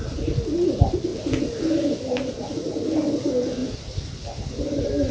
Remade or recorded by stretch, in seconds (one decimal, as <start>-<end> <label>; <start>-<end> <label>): 0.0-5.1 recorded